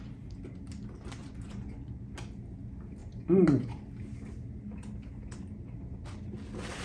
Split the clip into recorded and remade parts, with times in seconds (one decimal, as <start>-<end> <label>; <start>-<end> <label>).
0.0-1.2 recorded; 1.2-2.0 remade; 2.0-3.0 recorded; 3.0-3.8 remade; 3.8-6.8 recorded